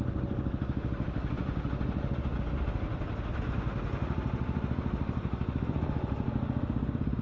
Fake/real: real